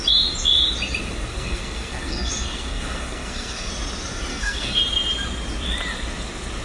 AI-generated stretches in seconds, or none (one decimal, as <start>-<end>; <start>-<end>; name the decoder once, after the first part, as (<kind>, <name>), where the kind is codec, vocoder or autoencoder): 1.3-3.7 (codec, SNAC); 4.3-4.8

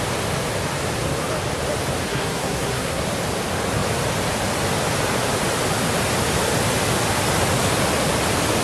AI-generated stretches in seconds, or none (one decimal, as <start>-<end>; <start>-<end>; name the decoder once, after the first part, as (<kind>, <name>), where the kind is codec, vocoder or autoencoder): 2.1-3.0 (codec, SNAC)

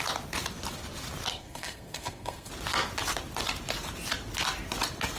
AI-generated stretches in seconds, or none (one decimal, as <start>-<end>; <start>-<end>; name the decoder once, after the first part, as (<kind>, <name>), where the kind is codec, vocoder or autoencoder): 1.3-2.5 (codec, SNAC)

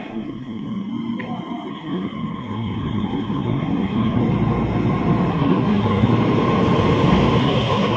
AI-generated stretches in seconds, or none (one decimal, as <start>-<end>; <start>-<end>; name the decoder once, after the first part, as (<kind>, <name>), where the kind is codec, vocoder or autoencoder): 0.0-0.9 (codec, SNAC); 1.7-4.2; 5.3-6.1; 7.4-8.0